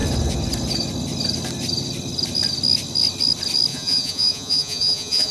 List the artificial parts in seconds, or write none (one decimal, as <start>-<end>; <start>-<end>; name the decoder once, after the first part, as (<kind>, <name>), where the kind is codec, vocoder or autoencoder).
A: 3.7-5.3 (vocoder, Vocos)